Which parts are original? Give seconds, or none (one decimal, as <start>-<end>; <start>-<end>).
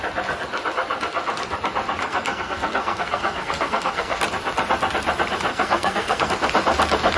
0.0-2.0; 4.2-5.5; 6.3-7.2